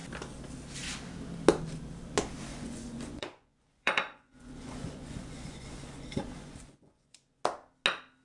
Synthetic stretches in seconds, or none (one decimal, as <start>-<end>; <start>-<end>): 2.5-7.4